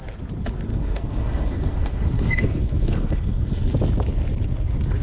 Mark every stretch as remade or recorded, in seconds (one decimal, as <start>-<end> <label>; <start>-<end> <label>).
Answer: 0.0-0.7 recorded; 0.7-3.7 remade; 3.7-5.0 recorded